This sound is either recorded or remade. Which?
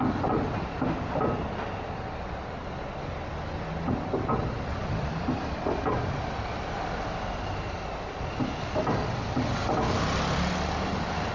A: recorded